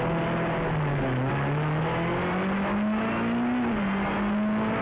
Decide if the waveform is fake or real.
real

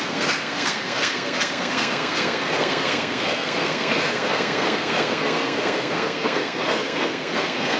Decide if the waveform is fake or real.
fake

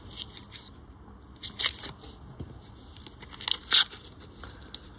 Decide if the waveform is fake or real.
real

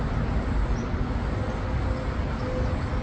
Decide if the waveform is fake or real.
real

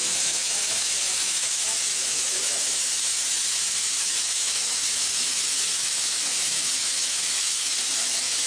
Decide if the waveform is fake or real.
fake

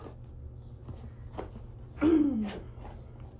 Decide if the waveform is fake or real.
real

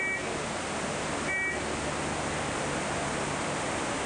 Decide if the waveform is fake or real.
real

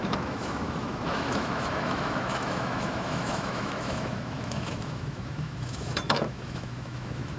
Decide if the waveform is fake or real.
fake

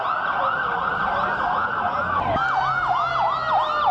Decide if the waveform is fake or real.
real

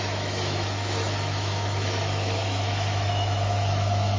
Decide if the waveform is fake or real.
fake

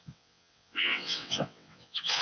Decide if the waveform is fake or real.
fake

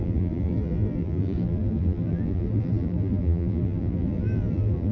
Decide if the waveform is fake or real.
fake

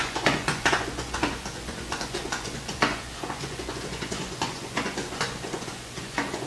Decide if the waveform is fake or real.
fake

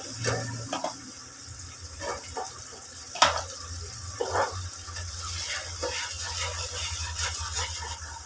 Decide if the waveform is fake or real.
real